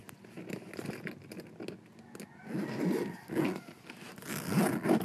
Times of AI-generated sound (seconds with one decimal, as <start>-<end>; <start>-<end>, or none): none